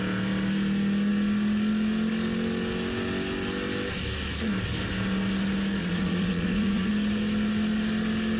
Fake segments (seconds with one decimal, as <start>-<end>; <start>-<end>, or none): 5.8-6.9